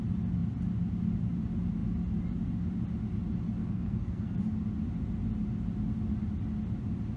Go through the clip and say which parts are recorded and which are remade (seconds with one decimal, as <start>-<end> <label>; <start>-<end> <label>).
0.0-3.6 recorded; 3.6-4.4 remade; 4.4-7.2 recorded